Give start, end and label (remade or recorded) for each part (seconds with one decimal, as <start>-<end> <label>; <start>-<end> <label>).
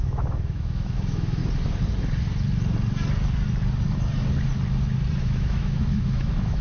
0.0-1.4 remade; 1.4-5.2 recorded; 5.2-6.6 remade